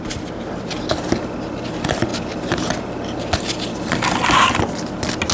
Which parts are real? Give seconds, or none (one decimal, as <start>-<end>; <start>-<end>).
0.0-5.3